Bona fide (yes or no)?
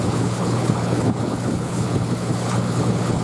no